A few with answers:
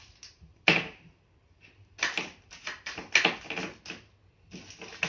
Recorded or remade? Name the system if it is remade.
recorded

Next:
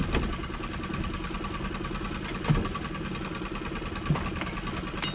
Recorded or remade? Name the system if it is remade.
recorded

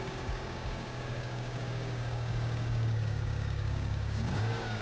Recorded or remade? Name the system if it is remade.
remade, codec, DAC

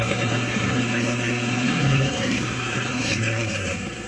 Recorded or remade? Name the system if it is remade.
remade, codec, SNAC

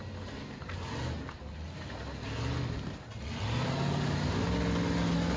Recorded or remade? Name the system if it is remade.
recorded